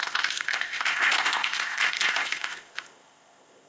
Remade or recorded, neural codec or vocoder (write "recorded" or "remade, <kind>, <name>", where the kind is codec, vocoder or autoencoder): remade, codec, ZipCodec